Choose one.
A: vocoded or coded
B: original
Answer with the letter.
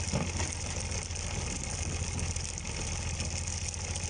B